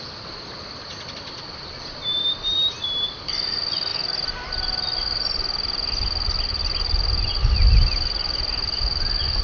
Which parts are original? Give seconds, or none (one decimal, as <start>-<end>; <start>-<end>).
0.0-9.4